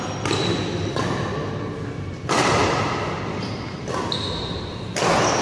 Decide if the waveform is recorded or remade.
recorded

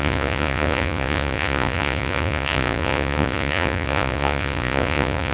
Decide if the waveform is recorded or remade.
remade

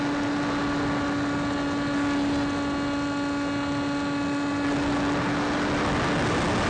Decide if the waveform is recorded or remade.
recorded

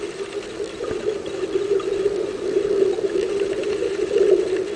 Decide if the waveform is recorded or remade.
recorded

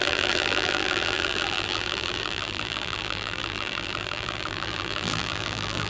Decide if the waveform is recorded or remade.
remade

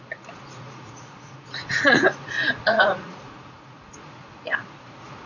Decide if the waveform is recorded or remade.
remade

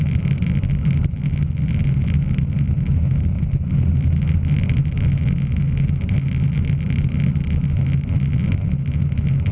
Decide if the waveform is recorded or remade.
recorded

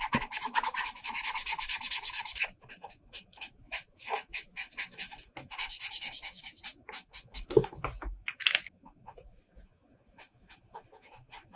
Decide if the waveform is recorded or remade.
remade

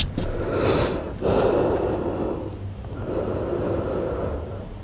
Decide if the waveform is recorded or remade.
recorded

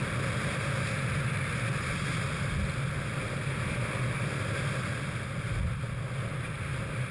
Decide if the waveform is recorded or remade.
recorded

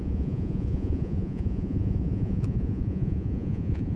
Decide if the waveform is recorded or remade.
remade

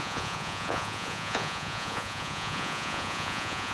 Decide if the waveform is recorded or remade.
remade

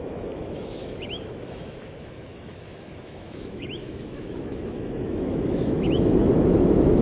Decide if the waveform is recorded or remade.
remade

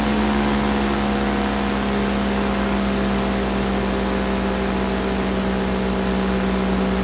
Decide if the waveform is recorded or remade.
recorded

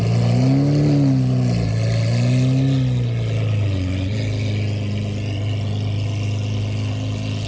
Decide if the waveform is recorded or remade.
recorded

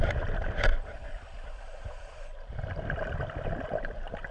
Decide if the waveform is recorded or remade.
remade